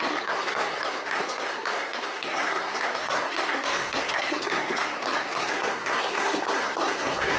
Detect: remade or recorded remade